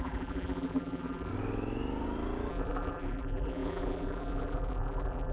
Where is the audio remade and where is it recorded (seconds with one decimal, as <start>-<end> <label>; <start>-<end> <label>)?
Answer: 0.0-1.3 remade; 1.3-2.5 recorded; 2.5-5.3 remade